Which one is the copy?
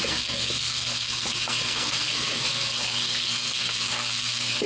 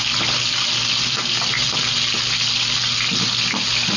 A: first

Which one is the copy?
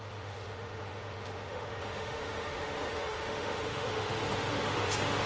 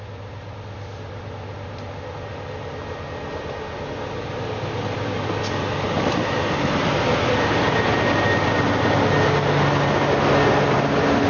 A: first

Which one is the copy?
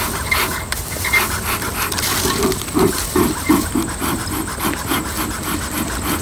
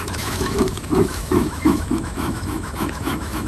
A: second